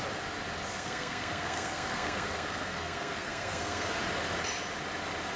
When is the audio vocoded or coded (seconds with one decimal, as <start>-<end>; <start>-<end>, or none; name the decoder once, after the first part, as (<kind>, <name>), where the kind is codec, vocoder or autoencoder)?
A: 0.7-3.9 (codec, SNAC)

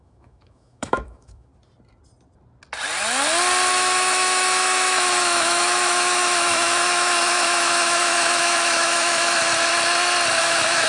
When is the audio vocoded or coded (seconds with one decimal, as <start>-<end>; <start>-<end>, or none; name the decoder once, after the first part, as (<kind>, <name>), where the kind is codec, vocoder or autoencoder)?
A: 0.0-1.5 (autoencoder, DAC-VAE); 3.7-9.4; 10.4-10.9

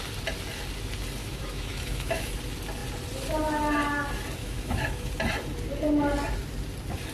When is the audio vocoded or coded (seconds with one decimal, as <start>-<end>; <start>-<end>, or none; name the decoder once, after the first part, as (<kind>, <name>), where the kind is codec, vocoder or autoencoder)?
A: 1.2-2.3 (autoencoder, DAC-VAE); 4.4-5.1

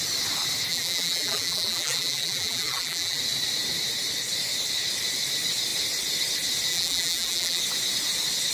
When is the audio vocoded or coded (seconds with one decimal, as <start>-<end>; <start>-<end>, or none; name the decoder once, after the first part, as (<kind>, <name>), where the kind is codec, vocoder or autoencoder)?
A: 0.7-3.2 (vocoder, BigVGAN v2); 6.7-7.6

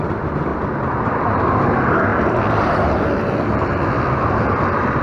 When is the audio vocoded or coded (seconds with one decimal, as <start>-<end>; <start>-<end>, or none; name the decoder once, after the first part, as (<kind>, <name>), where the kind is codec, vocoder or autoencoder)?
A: 0.0-0.5 (vocoder, BigVGAN v2); 1.1-2.1; 3.2-5.0

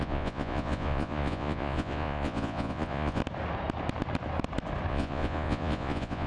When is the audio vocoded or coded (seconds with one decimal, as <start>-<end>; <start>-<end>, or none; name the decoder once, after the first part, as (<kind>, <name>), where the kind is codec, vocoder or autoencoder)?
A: 0.0-3.2 (vocoder, Vocos); 4.9-6.3